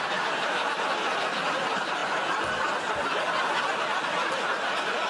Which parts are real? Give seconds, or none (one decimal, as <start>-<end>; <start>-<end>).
0.0-5.1